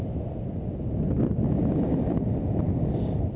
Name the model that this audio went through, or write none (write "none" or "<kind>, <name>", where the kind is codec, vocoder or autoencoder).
none